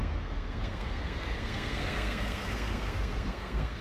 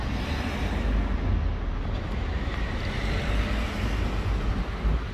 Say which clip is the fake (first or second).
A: first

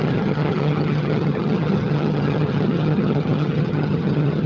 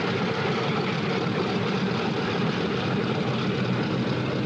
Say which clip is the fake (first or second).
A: first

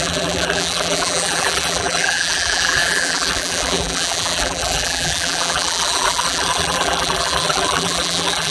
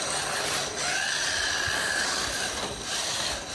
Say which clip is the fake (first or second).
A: first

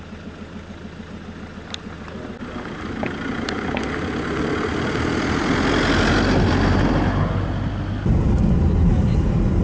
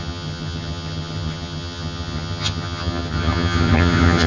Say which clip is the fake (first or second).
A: second